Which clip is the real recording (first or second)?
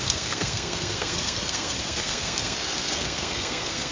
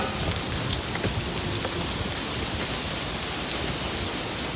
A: second